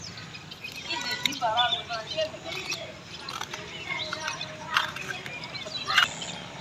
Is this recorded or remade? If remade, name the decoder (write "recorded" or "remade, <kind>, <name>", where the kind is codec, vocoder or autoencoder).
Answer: recorded